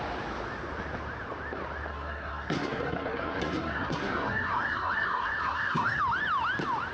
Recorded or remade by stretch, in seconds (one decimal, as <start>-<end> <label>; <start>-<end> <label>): 0.0-1.9 recorded; 1.9-6.0 remade; 6.0-6.9 recorded